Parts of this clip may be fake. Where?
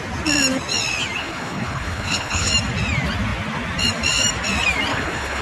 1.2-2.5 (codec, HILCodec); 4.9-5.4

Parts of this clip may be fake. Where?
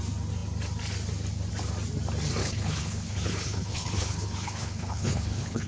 2.4-5.7 (codec, HILCodec)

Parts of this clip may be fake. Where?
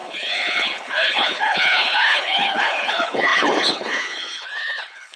0.0-5.2 (codec, HILCodec)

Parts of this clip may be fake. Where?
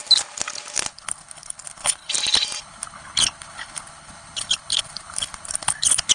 0.9-2.1 (codec, HILCodec); 2.6-6.1